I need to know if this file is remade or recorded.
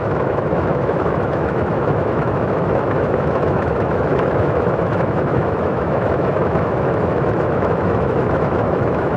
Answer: remade